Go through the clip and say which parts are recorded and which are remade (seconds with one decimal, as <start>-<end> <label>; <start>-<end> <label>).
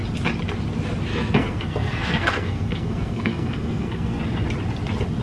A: 0.0-1.1 recorded; 1.1-4.2 remade; 4.2-5.2 recorded